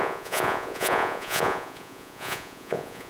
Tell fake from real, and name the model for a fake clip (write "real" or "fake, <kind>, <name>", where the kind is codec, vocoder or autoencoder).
fake, vocoder, Vocos